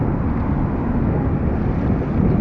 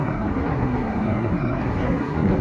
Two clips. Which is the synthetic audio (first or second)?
second